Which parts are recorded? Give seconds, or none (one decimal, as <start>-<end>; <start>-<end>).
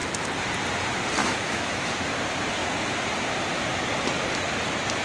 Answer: 0.0-1.2; 2.1-5.0